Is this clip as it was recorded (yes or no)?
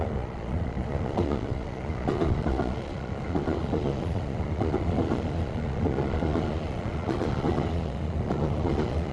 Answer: no